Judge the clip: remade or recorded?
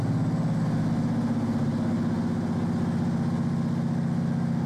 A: recorded